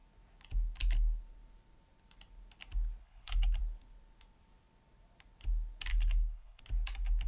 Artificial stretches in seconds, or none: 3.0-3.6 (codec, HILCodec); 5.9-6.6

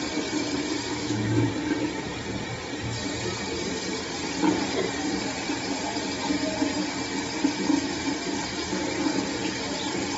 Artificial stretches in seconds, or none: 0.9-1.5 (autoencoder, DAC-VAE)

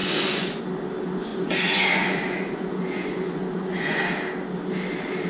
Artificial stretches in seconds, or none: 0.0-0.6 (vocoder, Vocos); 1.3-4.0

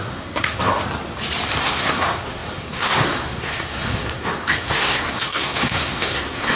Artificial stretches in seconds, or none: 0.0-0.8 (codec, SNAC); 1.6-6.6

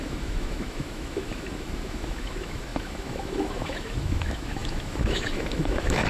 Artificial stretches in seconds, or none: 0.0-6.1 (autoencoder, DAC-VAE)

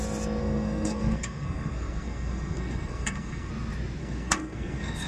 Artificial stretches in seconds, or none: 0.4-3.5 (codec, SNAC); 4.0-5.1

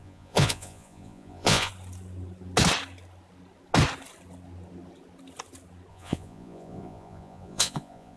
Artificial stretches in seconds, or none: 0.0-1.7 (vocoder, Vocos); 5.9-8.2

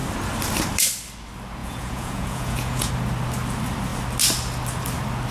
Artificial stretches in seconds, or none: 1.6-2.9 (vocoder, Vocos)